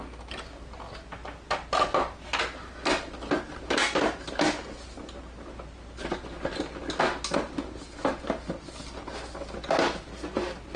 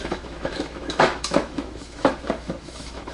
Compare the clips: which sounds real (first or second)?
first